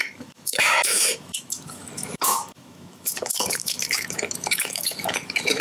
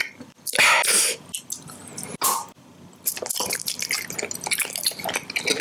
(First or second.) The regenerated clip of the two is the first